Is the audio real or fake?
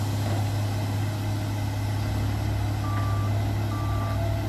real